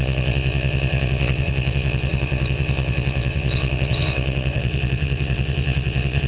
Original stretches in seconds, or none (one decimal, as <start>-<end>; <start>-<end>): none

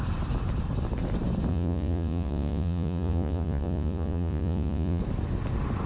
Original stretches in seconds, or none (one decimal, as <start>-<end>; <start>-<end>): 0.0-1.5; 5.0-5.9

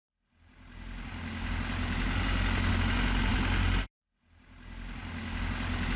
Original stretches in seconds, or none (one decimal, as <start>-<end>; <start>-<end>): 0.0-6.0

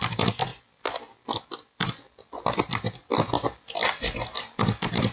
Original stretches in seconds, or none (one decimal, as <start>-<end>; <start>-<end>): none

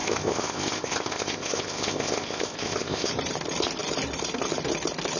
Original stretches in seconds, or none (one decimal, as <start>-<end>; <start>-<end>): 3.1-5.2

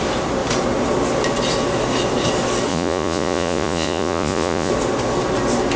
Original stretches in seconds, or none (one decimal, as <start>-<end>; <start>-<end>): 0.0-2.7; 4.7-5.8

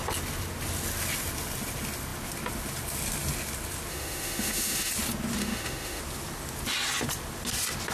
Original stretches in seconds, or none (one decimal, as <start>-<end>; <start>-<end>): 0.0-3.9; 4.9-5.4; 6.0-7.9

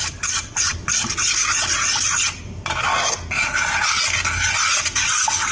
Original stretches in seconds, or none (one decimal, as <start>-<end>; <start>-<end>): 0.0-5.5